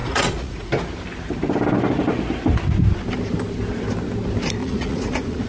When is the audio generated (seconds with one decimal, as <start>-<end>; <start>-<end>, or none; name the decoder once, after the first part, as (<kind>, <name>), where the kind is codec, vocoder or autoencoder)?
0.0-0.7 (vocoder, Vocos); 4.6-5.5